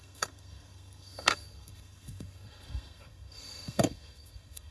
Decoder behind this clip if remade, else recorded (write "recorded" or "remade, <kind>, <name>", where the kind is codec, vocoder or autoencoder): remade, codec, SNAC